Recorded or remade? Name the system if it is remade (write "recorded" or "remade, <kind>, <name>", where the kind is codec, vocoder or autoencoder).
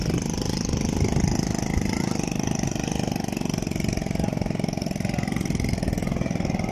recorded